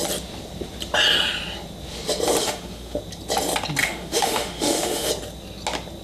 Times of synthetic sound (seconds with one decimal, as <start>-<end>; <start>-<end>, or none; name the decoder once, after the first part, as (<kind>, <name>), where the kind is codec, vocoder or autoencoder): 2.4-3.0 (autoencoder, DAC-VAE); 3.8-5.1